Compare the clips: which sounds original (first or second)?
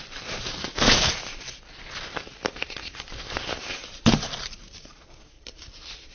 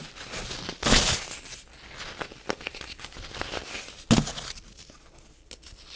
second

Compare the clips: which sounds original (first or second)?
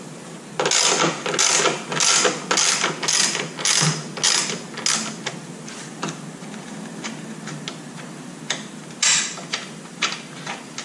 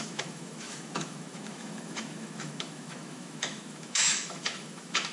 first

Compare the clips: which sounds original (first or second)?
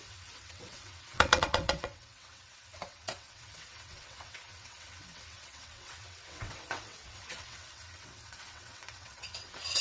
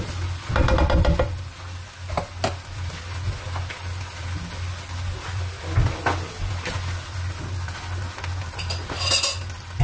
second